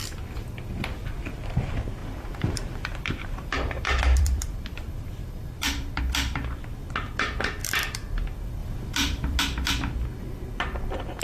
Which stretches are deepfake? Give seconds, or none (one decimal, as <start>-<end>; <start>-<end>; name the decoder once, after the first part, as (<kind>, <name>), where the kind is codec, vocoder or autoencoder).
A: 2.0-6.0 (vocoder, BigVGAN v2); 7.6-8.1; 8.6-9.4